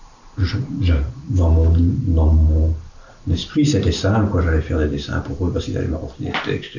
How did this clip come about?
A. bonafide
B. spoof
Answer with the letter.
A